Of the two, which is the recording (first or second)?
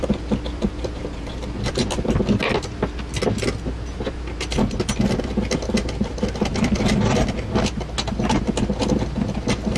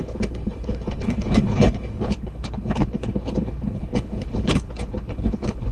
first